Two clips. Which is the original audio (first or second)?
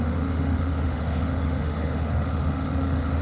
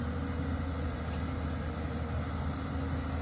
second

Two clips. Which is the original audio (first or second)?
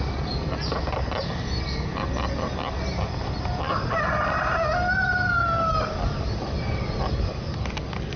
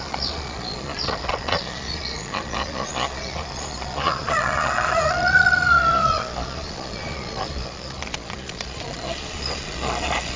first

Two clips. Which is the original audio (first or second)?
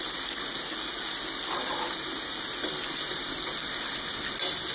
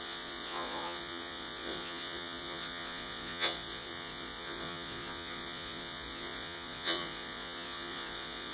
first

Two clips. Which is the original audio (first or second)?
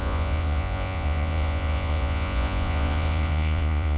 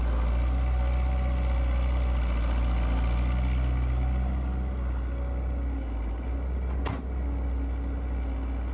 second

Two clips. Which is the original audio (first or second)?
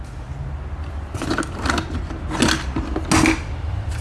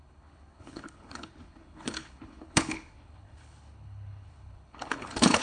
first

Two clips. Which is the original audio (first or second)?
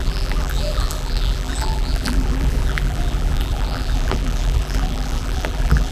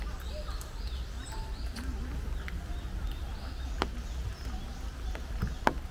second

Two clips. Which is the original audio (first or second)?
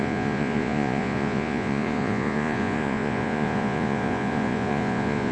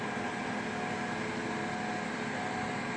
second